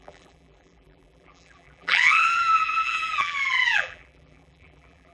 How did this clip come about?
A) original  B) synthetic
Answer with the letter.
B